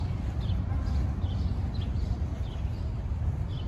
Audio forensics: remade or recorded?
recorded